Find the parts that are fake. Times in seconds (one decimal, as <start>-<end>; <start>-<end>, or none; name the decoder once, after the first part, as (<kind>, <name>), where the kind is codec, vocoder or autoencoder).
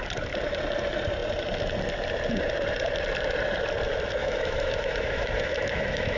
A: 4.2-6.2 (autoencoder, DAC-VAE)